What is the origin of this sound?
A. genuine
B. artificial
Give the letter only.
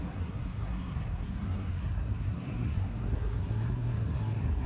B